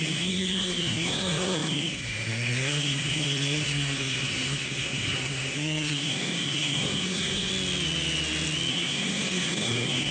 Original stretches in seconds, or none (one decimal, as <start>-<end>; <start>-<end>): 7.5-8.7